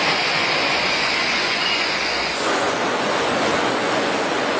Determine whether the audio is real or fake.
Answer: fake